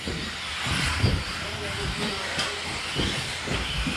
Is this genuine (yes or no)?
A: yes